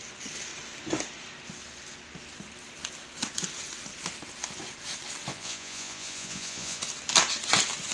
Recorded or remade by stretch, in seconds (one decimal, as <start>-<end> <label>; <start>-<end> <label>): 0.0-5.3 recorded; 5.3-6.8 remade; 6.8-7.9 recorded